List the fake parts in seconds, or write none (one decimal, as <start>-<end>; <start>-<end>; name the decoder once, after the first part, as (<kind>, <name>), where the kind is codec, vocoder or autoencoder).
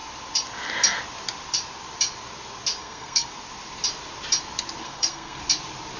2.8-3.3 (codec, SNAC); 4.8-5.4